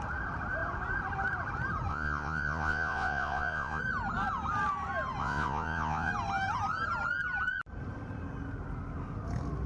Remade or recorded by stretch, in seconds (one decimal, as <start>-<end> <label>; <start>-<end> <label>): 0.0-1.9 recorded; 1.9-3.8 remade; 3.8-5.2 recorded; 5.2-6.1 remade; 6.1-9.7 recorded